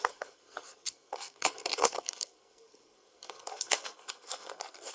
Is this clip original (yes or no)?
no